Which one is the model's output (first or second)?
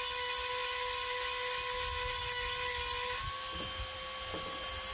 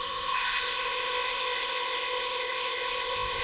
second